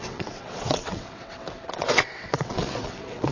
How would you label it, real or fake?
fake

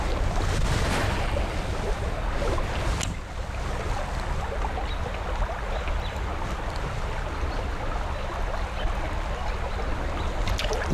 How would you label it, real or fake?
real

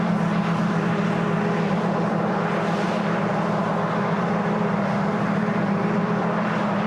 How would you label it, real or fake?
fake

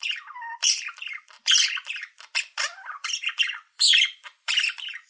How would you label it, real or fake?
fake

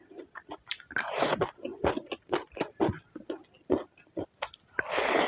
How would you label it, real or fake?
real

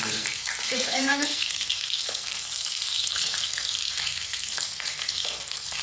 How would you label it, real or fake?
fake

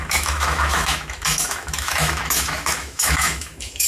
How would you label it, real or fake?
fake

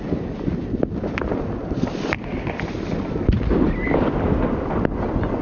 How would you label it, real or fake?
real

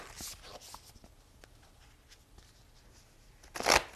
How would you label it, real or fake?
real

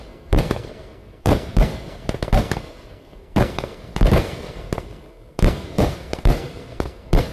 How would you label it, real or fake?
fake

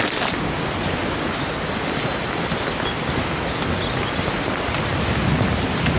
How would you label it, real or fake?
real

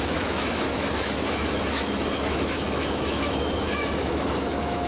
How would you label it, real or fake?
fake